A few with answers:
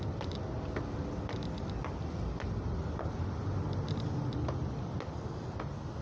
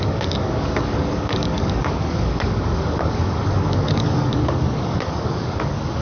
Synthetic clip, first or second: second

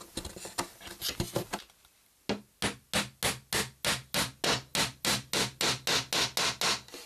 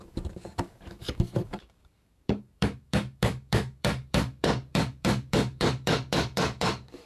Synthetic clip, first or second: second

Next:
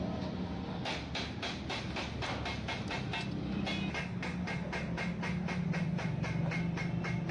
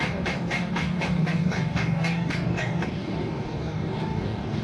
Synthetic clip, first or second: second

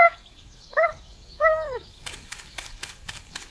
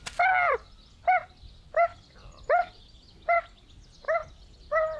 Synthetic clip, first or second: first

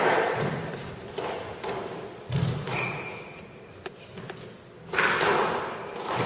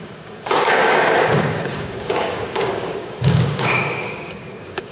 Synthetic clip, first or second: second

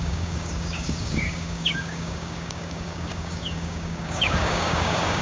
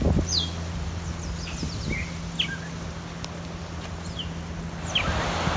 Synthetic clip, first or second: first